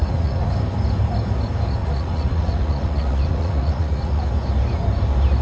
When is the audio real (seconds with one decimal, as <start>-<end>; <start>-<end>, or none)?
0.5-1.8; 4.2-5.4